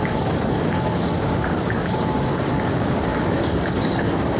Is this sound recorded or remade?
remade